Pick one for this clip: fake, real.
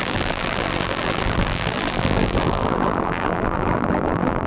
fake